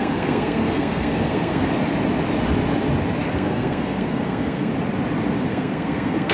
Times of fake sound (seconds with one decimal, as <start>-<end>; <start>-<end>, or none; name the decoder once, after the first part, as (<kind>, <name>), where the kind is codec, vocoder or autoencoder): 0.0-1.6 (codec, SNAC); 3.3-4.7; 5.5-6.3